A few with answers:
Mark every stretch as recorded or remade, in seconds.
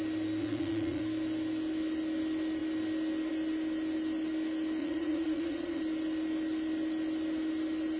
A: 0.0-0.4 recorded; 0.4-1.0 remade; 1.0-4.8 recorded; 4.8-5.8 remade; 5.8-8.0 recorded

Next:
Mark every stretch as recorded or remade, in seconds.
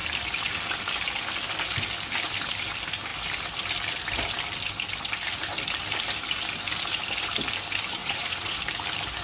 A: 0.0-8.0 recorded; 8.0-8.6 remade; 8.6-9.2 recorded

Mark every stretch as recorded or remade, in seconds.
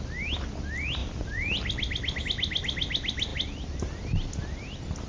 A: 0.0-5.1 recorded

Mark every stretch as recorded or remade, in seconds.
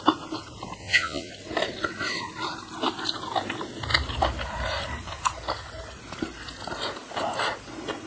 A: 0.0-0.8 recorded; 0.8-1.3 remade; 1.3-8.1 recorded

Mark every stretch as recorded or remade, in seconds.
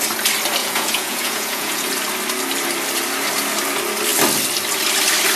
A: 0.0-0.6 recorded; 0.6-1.9 remade; 1.9-5.4 recorded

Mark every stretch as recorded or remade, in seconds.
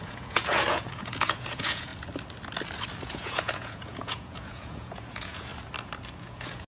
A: 0.0-1.9 remade; 1.9-3.0 recorded; 3.0-5.5 remade; 5.5-6.2 recorded; 6.2-6.7 remade